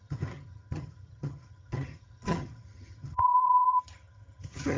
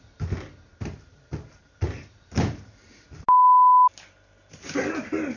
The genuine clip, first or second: second